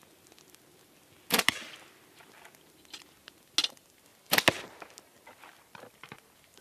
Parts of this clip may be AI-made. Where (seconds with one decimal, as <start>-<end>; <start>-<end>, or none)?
none